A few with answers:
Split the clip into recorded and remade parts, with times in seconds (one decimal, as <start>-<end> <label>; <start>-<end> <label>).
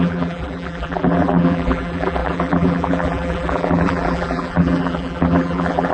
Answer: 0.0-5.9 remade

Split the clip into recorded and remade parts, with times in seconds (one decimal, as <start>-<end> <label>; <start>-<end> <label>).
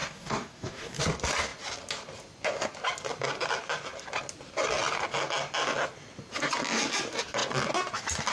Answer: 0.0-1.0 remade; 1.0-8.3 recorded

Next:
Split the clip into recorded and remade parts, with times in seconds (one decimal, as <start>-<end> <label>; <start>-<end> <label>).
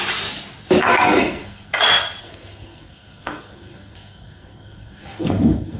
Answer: 0.0-0.8 recorded; 0.8-1.7 remade; 1.7-2.2 recorded; 2.2-5.8 remade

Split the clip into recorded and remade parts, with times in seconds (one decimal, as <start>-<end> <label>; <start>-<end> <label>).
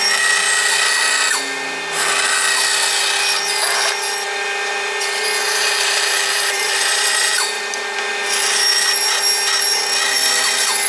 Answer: 0.0-5.4 recorded; 5.4-7.6 remade; 7.6-10.9 recorded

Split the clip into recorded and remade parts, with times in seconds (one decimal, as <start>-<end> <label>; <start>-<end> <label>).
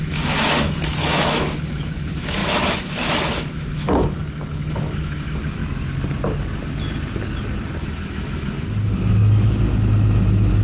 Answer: 0.0-5.6 remade; 5.6-7.8 recorded; 7.8-9.2 remade; 9.2-10.6 recorded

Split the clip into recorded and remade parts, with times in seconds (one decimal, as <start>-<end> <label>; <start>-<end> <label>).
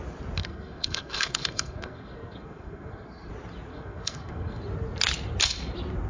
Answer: 0.0-0.4 recorded; 0.4-3.3 remade; 3.3-3.7 recorded; 3.7-4.6 remade; 4.6-6.1 recorded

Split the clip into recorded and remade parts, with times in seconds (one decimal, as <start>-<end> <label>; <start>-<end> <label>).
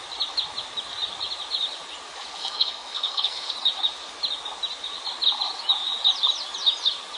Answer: 0.0-2.4 recorded; 2.4-3.5 remade; 3.5-7.2 recorded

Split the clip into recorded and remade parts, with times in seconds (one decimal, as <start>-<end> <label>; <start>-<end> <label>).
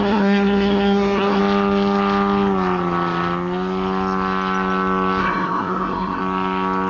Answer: 0.0-1.4 remade; 1.4-5.2 recorded; 5.2-6.2 remade; 6.2-6.9 recorded